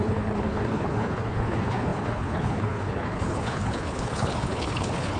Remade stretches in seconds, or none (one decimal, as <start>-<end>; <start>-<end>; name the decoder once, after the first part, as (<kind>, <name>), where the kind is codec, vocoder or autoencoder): 0.0-5.2 (codec, HILCodec)